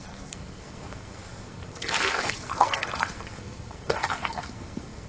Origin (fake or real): fake